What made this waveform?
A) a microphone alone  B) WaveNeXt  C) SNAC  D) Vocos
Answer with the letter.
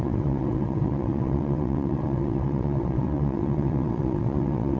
B